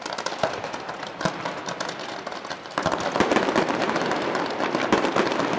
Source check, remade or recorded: recorded